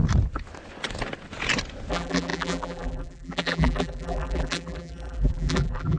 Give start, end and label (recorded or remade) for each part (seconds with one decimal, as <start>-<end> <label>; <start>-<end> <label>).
0.0-1.9 recorded; 1.9-6.0 remade